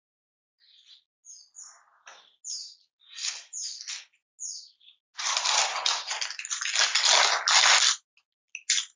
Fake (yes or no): no